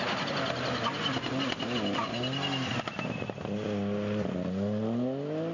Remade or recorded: recorded